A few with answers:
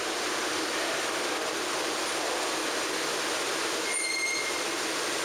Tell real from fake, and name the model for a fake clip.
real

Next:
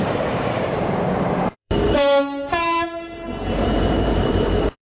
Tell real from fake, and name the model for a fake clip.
fake, vocoder, BigVGAN v2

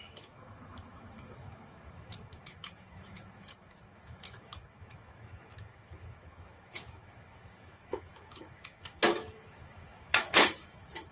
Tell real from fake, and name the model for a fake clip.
fake, autoencoder, DAC-VAE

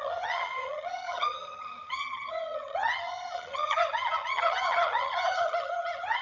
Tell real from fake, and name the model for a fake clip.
fake, vocoder, HiFi-GAN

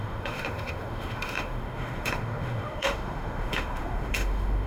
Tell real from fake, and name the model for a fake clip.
fake, autoencoder, DAC-VAE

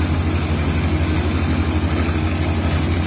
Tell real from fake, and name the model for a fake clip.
real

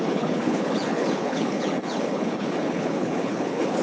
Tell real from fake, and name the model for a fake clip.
fake, codec, HILCodec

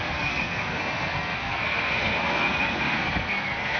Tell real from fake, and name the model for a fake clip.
fake, codec, SNAC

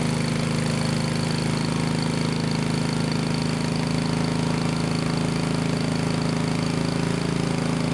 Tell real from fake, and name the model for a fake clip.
real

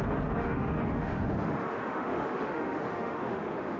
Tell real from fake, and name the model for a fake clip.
fake, autoencoder, DAC-VAE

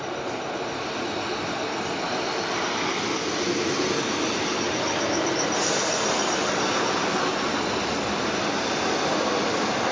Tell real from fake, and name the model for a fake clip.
real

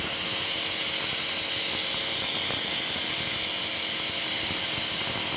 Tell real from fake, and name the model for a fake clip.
real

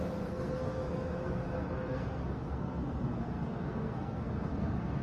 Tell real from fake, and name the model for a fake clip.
fake, codec, SNAC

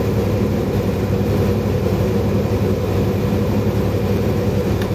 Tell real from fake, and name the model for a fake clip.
fake, vocoder, BigVGAN v2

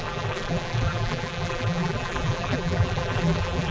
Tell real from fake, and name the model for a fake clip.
fake, vocoder, BigVGAN v2